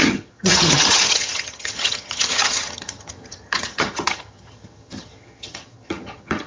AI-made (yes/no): yes